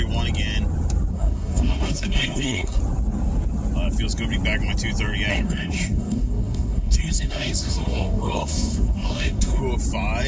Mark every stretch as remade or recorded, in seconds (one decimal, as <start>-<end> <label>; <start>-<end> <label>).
0.0-1.1 recorded; 1.1-2.8 remade; 2.8-5.3 recorded; 5.3-9.6 remade; 9.6-10.3 recorded